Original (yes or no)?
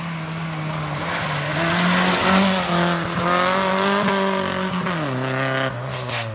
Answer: yes